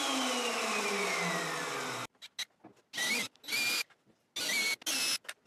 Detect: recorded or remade recorded